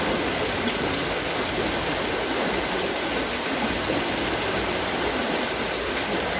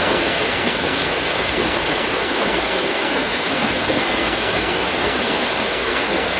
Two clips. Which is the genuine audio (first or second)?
first